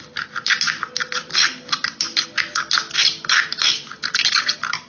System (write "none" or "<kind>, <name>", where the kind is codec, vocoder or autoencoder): none